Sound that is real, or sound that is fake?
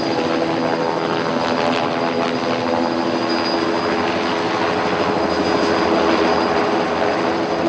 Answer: real